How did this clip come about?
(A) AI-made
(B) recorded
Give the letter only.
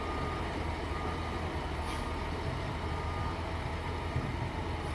B